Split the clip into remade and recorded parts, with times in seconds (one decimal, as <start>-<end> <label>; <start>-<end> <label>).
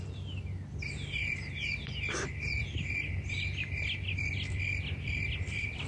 0.0-5.9 recorded